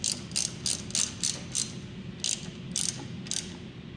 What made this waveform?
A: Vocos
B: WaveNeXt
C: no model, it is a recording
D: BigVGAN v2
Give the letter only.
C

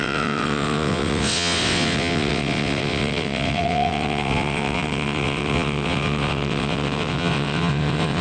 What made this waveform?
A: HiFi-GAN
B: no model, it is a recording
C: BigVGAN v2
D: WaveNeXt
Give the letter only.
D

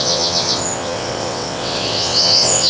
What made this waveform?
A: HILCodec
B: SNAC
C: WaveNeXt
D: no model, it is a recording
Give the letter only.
C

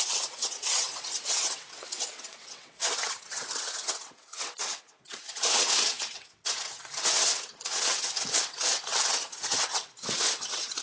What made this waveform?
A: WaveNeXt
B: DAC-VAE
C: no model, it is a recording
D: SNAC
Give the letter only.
A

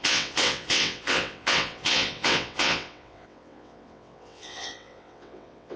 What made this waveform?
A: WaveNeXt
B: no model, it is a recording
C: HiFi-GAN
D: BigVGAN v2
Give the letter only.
A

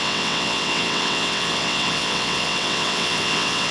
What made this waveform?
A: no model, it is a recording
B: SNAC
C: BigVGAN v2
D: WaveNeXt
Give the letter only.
D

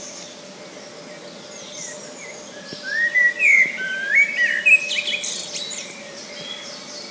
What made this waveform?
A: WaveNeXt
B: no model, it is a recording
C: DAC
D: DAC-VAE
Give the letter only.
B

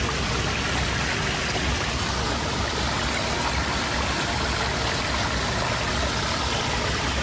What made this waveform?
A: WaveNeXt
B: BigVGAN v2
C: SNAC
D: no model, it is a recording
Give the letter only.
D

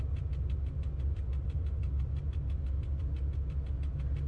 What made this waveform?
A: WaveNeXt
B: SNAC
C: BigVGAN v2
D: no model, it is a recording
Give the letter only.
D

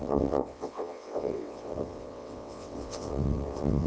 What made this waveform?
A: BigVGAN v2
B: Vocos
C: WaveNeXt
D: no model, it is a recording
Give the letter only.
C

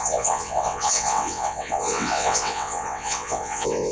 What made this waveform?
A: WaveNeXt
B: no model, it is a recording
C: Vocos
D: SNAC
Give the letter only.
A